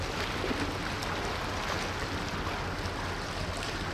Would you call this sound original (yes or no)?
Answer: yes